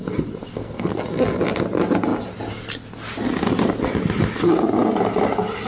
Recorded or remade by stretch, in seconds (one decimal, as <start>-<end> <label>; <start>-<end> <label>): 0.0-0.5 recorded; 0.5-1.0 remade; 1.0-5.7 recorded